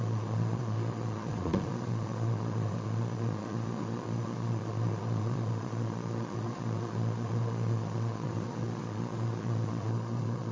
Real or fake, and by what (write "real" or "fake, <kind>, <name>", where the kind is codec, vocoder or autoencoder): fake, vocoder, Vocos